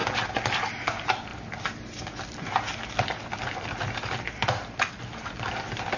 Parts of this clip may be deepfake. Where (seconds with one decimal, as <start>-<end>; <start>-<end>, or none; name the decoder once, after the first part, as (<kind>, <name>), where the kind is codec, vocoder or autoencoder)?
none